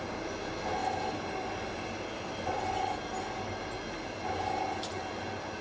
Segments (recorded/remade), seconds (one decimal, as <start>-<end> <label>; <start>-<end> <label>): 0.0-5.6 recorded